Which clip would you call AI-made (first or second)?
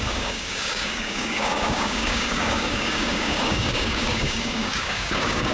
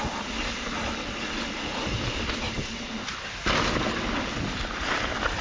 first